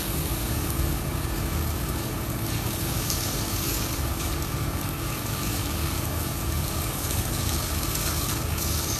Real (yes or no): no